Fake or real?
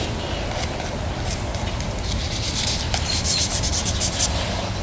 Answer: real